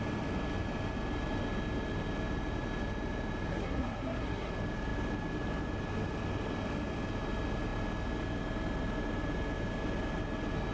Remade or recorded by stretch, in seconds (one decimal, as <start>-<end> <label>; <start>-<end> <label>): 0.0-3.5 recorded; 3.5-4.5 remade; 4.5-10.7 recorded